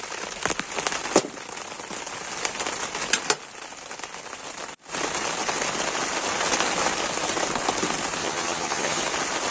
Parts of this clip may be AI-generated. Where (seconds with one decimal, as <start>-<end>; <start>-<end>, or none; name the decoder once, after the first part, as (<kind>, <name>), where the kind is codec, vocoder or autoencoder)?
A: 8.2-9.0 (vocoder, HiFi-GAN)